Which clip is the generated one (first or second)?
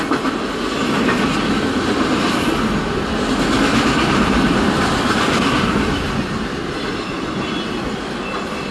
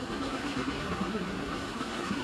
second